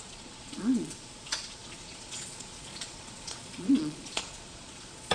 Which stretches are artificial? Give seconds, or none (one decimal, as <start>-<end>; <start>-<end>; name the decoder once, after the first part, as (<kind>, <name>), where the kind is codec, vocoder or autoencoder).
0.0-5.1 (vocoder, Vocos)